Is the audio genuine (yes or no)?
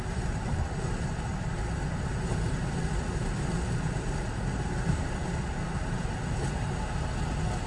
yes